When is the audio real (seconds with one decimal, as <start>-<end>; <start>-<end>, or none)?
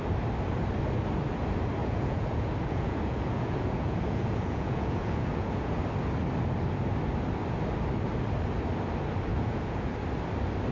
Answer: 0.0-1.8; 5.8-9.3; 9.9-10.7